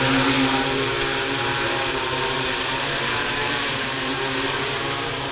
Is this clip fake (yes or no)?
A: yes